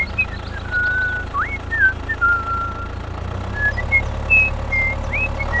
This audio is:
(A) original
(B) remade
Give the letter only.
A